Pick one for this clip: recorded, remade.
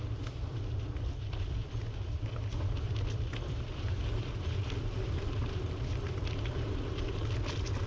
remade